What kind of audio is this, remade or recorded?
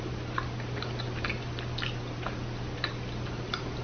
recorded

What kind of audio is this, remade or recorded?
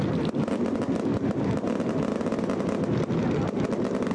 recorded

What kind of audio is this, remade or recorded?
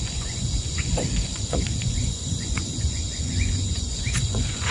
remade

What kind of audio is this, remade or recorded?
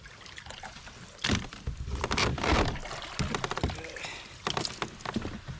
recorded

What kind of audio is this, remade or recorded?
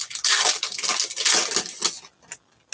recorded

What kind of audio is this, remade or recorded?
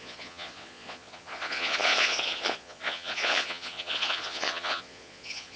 remade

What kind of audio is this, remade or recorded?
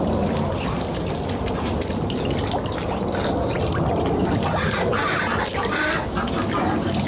recorded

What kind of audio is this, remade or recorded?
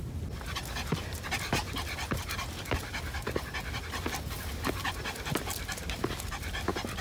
recorded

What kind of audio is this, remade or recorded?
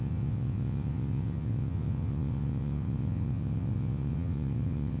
remade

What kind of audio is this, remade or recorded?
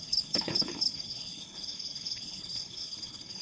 remade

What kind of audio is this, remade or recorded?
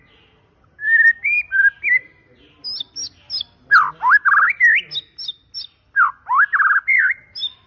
recorded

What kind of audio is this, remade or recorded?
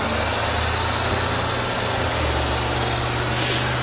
recorded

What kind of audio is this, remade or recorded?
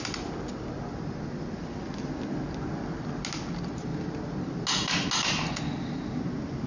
recorded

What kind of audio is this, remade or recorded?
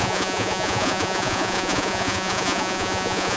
remade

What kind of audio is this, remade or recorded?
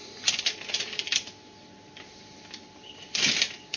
recorded